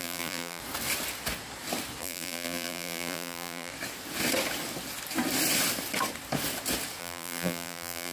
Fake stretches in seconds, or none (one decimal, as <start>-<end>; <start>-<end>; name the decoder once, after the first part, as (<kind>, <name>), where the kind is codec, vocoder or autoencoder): 0.0-0.6 (vocoder, BigVGAN v2); 2.0-3.7; 7.0-8.1